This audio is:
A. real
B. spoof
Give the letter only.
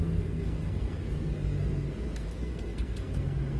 B